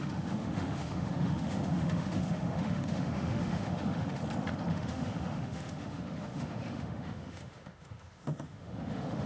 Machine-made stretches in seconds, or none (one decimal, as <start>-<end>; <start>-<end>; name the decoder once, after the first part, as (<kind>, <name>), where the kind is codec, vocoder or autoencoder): 0.0-4.2 (autoencoder, DAC-VAE); 4.7-9.3